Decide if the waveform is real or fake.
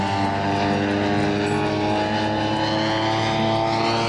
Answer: real